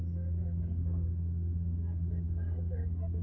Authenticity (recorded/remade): remade